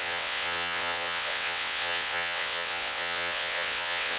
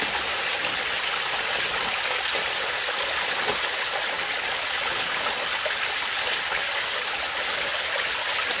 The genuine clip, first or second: second